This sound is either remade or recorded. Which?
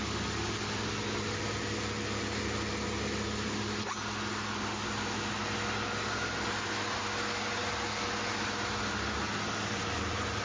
recorded